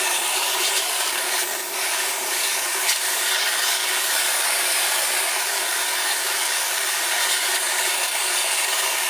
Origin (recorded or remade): remade